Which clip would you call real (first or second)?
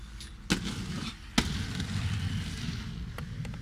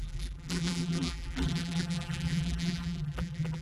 first